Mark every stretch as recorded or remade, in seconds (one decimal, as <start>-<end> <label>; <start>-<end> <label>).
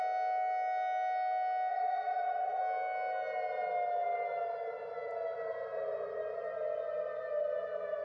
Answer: 0.0-1.7 recorded; 1.7-2.6 remade; 2.6-8.0 recorded